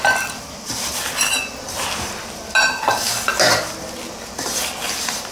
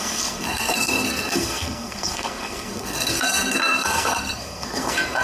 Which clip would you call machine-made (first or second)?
second